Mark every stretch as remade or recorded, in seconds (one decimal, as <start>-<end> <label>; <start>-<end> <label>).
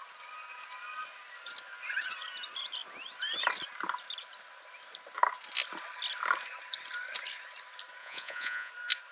0.0-8.0 recorded; 8.0-8.7 remade; 8.7-9.1 recorded